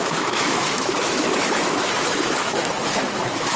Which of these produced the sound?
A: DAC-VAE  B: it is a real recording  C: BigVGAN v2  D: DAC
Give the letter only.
A